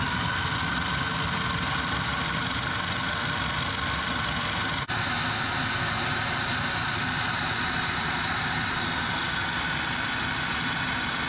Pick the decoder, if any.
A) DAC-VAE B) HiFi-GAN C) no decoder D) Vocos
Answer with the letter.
C